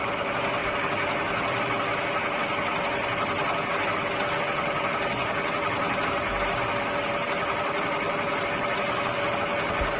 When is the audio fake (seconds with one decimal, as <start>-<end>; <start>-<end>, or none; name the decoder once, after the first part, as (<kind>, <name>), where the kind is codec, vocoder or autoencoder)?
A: none